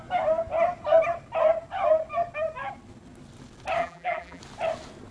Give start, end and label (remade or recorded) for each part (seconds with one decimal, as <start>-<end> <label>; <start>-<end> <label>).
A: 0.0-3.8 recorded; 3.8-4.4 remade; 4.4-5.1 recorded